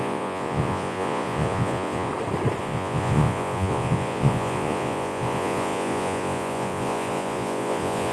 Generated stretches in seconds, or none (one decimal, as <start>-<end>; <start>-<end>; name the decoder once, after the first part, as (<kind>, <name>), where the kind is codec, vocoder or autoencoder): 0.0-2.1 (vocoder, Vocos); 2.6-8.1

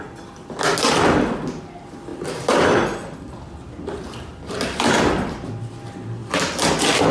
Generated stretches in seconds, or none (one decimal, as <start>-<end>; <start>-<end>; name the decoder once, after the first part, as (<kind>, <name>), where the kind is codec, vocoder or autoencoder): 2.1-3.3 (vocoder, BigVGAN v2); 4.3-5.5; 6.2-7.1